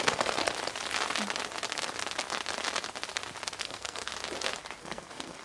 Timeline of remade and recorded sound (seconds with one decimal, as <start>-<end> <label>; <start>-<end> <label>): 0.0-0.4 remade; 0.4-3.6 recorded; 3.6-4.1 remade; 4.1-4.8 recorded; 4.8-5.4 remade